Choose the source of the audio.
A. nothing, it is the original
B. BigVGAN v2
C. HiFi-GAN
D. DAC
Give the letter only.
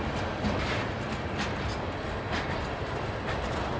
A